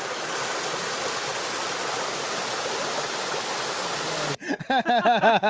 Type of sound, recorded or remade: recorded